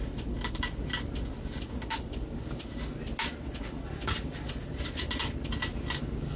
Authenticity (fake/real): real